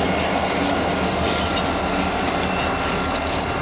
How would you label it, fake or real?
real